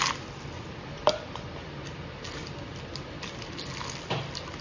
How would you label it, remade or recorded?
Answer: recorded